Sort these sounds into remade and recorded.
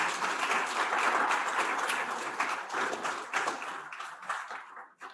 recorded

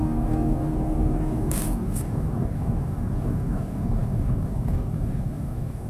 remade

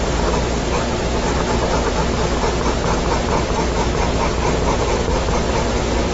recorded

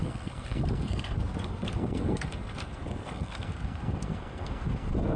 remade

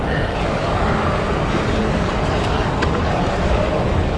remade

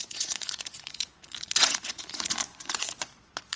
remade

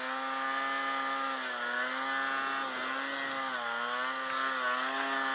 recorded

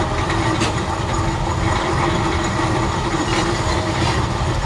remade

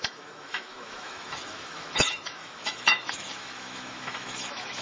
remade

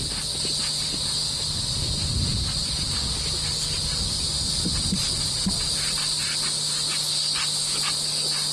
recorded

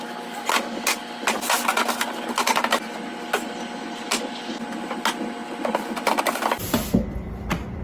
recorded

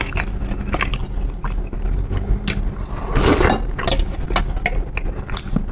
recorded